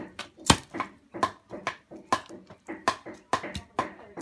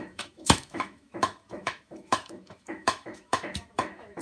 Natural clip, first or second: first